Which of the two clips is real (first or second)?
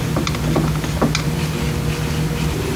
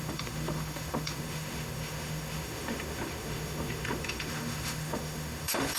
first